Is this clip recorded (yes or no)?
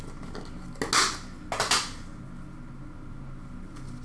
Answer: yes